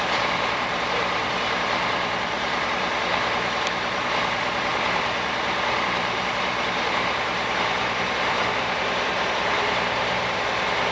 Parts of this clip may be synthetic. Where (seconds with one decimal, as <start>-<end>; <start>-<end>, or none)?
0.0-10.9